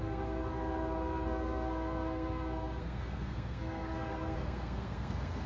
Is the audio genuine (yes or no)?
no